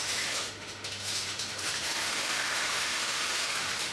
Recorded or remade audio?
remade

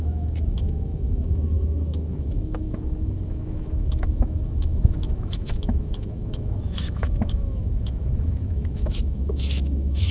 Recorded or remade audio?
remade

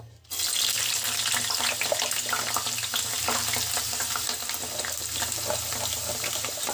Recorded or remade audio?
recorded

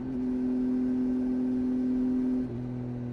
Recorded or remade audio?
recorded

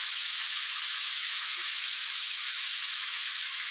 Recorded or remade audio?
remade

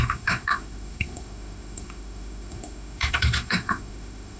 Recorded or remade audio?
remade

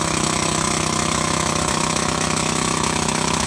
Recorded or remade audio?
remade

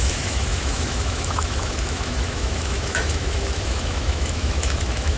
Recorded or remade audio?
remade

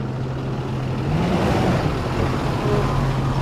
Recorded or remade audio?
recorded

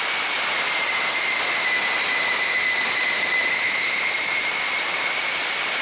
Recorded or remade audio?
recorded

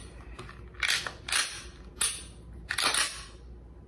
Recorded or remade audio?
recorded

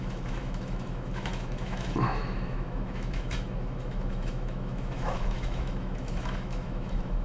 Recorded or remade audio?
remade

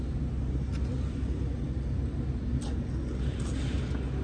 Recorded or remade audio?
recorded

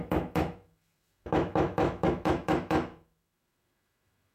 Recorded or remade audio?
remade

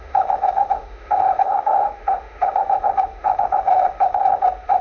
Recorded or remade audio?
remade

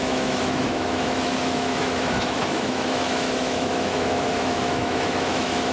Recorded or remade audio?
remade